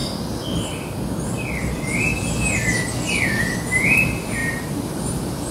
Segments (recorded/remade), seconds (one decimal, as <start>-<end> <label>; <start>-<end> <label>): 0.0-4.4 recorded; 4.4-5.5 remade